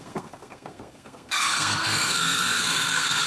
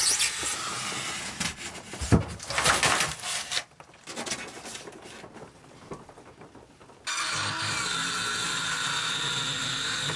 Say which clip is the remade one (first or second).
first